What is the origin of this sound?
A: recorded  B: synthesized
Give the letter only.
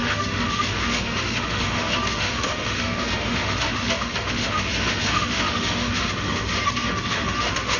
B